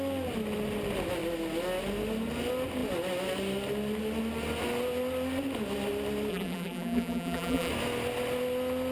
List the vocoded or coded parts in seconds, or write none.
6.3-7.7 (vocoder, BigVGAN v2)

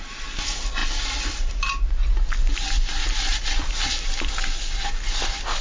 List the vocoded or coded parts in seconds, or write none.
0.8-1.5 (vocoder, BigVGAN v2); 3.0-4.3